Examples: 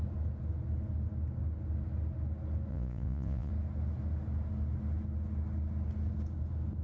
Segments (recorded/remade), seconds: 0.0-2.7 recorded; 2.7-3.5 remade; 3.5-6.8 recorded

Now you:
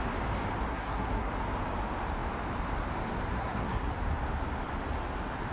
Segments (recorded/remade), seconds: 0.0-0.7 recorded; 0.7-1.3 remade; 1.3-3.3 recorded; 3.3-3.9 remade; 3.9-5.5 recorded

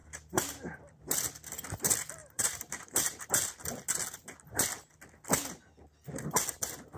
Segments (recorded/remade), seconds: 0.0-1.0 remade; 1.0-2.2 recorded; 2.2-3.2 remade; 3.2-7.0 recorded

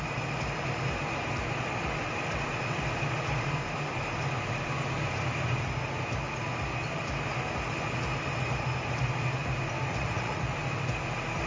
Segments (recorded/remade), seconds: 0.0-9.9 recorded; 9.9-10.4 remade; 10.4-11.5 recorded